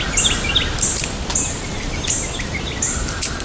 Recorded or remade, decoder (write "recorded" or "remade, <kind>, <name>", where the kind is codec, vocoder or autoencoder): recorded